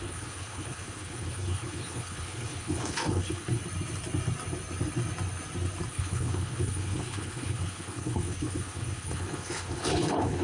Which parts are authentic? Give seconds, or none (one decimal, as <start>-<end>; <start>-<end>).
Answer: 3.6-5.9